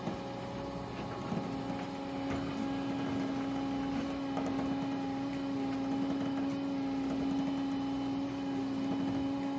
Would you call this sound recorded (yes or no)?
yes